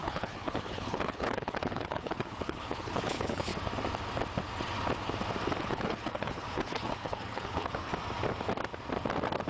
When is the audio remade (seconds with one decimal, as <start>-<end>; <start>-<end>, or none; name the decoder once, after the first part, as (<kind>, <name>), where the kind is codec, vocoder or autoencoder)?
0.0-3.5 (codec, HILCodec); 5.6-7.9